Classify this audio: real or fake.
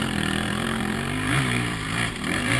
fake